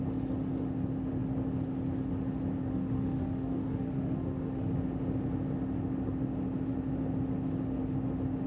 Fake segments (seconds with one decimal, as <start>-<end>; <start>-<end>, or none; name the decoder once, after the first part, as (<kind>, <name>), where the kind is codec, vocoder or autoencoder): 2.7-4.7 (autoencoder, DAC-VAE)